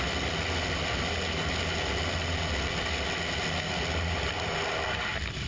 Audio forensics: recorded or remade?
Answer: recorded